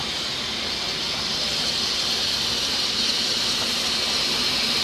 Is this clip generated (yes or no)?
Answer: no